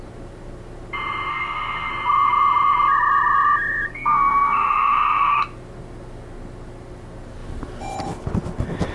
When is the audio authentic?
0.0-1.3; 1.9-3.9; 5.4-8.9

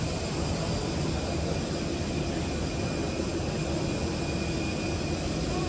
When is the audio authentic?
0.0-5.7